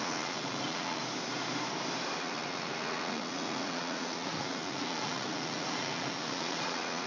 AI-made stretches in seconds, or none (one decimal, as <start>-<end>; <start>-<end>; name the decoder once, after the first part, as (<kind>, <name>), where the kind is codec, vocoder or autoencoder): 0.0-1.0 (vocoder, Vocos); 2.2-7.1